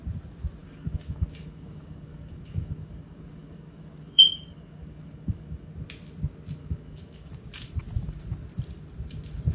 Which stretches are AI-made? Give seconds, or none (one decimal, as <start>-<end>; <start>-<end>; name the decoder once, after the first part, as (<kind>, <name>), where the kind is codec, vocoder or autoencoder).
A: 0.6-5.7 (codec, DAC); 6.6-7.3